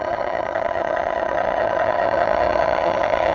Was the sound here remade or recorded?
remade